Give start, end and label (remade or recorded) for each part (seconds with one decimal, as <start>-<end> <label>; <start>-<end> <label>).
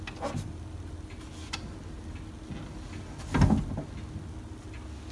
0.0-5.1 recorded